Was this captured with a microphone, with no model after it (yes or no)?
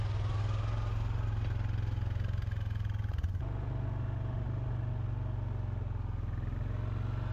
yes